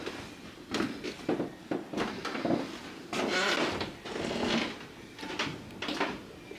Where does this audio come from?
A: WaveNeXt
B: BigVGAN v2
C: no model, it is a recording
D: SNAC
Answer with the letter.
C